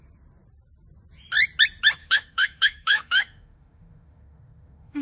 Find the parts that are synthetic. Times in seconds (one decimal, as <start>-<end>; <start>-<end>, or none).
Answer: 2.0-5.0